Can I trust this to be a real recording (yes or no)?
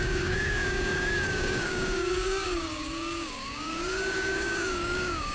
no